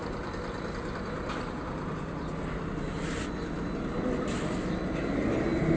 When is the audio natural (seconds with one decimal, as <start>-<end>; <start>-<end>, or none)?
2.1-5.8